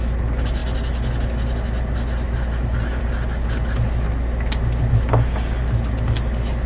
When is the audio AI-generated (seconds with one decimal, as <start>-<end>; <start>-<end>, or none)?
none